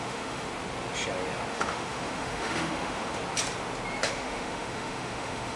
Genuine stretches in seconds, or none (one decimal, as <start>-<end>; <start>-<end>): 0.5-1.5; 3.2-4.1